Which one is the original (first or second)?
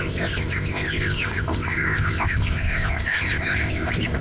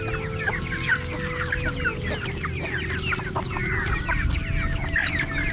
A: second